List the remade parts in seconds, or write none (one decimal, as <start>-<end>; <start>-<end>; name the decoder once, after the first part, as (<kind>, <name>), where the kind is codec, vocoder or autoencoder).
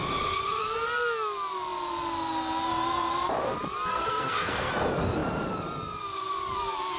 3.9-4.7 (codec, SNAC)